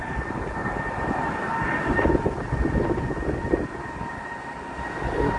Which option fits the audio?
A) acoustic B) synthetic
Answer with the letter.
A